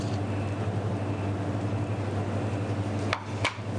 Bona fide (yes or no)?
yes